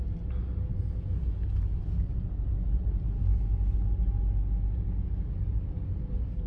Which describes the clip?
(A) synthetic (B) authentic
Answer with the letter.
B